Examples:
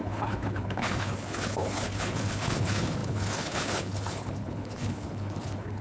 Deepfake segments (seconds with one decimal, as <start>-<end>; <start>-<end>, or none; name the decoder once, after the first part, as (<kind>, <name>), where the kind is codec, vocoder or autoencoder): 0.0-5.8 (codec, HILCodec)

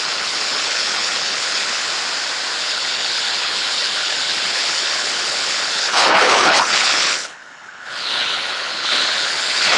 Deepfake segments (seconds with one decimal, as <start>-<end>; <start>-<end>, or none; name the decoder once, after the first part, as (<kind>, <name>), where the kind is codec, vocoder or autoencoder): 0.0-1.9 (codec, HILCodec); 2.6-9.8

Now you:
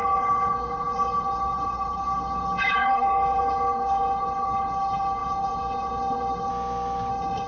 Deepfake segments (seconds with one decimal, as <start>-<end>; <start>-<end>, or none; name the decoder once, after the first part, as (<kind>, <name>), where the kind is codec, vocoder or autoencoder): 0.0-6.5 (codec, HILCodec); 7.1-7.5